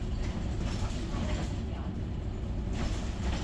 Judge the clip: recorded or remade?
recorded